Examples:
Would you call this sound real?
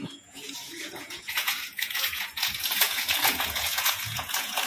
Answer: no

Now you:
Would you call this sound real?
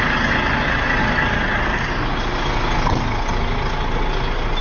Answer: yes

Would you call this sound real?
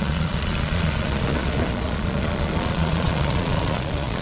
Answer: no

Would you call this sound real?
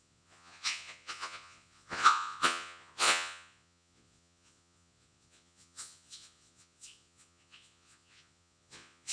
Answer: no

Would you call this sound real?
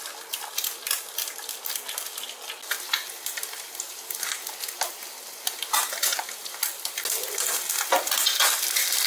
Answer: yes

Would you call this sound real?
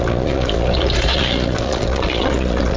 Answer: no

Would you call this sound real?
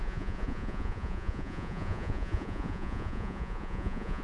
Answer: no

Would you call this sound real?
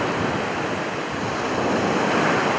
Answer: yes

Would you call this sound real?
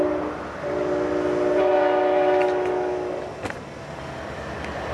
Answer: yes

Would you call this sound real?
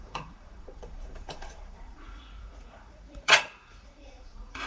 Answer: no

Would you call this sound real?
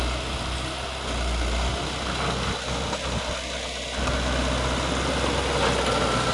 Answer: yes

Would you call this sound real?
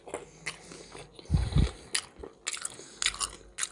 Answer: yes